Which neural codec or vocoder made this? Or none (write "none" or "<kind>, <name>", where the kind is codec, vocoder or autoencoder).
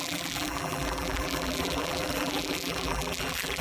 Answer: vocoder, BigVGAN v2